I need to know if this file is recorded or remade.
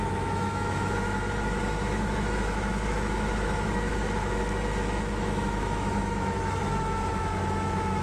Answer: remade